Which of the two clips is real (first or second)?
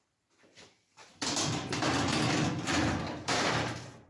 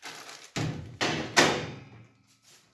second